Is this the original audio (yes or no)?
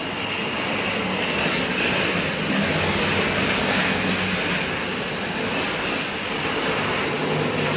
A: yes